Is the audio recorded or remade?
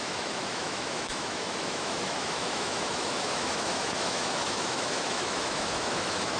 remade